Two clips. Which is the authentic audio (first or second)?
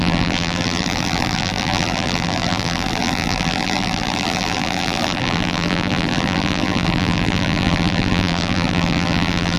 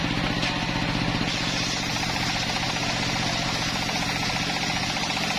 second